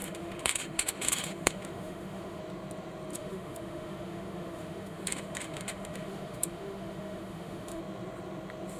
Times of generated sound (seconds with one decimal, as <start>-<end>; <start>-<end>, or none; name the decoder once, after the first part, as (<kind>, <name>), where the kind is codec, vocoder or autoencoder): 0.0-2.4 (autoencoder, DAC-VAE); 3.1-7.8